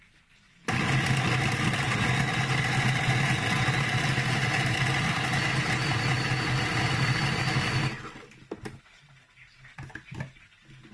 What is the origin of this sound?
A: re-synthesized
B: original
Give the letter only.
B